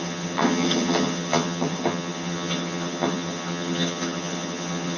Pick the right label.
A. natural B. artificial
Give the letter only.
B